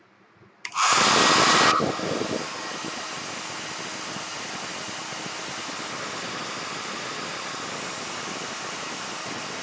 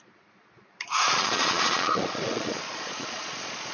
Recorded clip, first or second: first